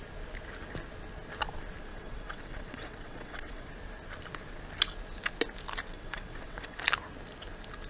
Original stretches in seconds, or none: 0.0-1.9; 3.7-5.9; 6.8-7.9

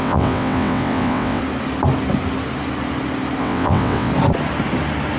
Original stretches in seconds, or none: 1.4-3.4; 4.1-5.2

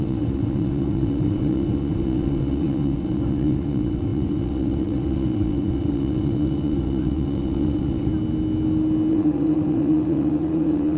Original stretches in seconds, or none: 8.1-9.1

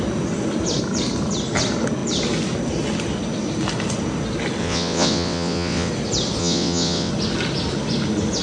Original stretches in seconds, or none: 0.0-4.6; 5.9-6.4; 7.1-8.4

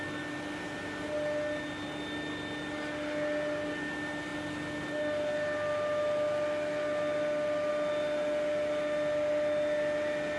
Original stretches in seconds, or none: 0.0-10.4

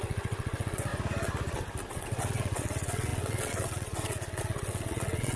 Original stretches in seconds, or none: 0.9-1.9